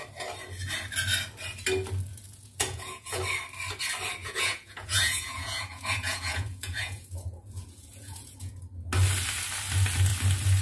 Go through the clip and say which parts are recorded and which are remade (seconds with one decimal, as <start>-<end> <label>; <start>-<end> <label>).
0.0-2.1 recorded; 2.1-3.2 remade; 3.2-4.2 recorded; 4.2-8.6 remade; 8.6-10.6 recorded